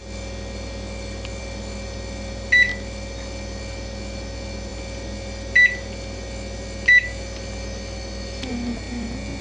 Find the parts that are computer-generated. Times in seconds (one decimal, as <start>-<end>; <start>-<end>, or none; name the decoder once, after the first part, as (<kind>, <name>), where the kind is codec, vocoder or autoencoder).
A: none